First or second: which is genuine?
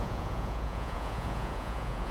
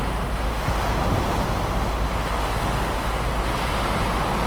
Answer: second